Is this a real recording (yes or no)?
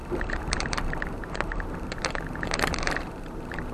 no